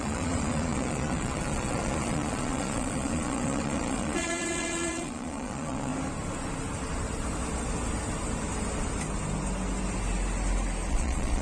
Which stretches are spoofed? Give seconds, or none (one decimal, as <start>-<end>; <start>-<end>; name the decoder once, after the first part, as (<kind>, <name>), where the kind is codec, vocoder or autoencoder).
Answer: 0.0-5.9 (vocoder, Vocos); 10.9-11.4